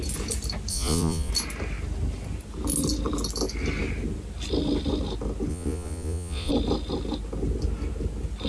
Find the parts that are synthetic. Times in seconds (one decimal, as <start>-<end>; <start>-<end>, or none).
0.7-1.3; 5.5-6.5